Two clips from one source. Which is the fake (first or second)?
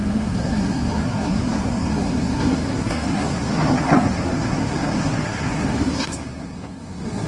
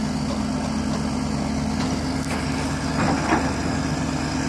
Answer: first